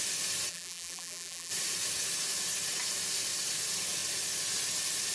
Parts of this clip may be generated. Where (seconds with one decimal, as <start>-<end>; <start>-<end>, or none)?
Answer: 0.5-1.5